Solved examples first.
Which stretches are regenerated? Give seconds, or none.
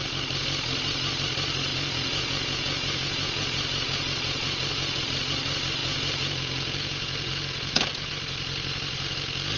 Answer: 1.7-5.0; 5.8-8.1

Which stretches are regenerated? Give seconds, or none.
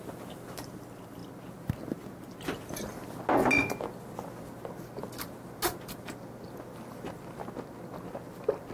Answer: none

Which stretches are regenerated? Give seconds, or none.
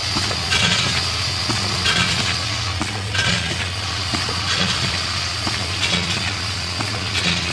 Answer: 0.0-7.5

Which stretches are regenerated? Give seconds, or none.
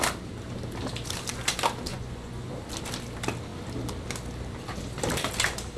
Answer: 1.9-2.5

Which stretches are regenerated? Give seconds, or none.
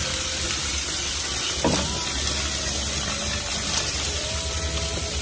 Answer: none